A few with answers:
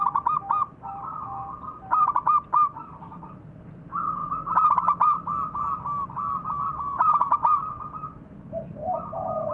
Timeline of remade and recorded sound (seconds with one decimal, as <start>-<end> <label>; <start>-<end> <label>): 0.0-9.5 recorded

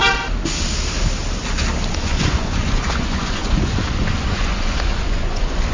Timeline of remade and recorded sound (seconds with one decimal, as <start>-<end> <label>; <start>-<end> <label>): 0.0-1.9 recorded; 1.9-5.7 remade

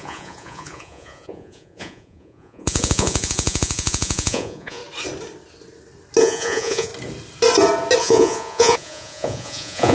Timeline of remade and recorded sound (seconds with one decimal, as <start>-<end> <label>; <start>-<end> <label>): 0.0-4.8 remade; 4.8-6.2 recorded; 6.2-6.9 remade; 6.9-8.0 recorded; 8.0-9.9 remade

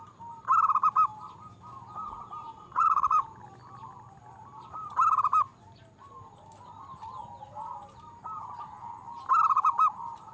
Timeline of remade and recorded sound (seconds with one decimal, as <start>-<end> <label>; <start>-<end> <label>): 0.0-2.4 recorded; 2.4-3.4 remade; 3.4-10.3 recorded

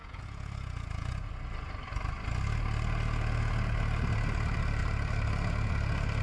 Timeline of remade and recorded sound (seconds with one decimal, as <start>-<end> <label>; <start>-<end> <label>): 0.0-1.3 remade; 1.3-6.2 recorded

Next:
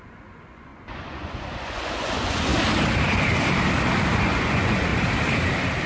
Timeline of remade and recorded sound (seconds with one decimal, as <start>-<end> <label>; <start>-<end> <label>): 0.0-2.5 remade; 2.5-4.2 recorded; 4.2-4.9 remade; 4.9-5.9 recorded

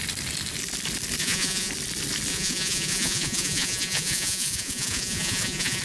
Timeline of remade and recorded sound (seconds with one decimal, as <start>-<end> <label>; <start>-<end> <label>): 0.0-1.2 recorded; 1.2-1.7 remade; 1.7-2.3 recorded; 2.3-5.8 remade